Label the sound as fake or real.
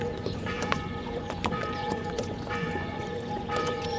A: fake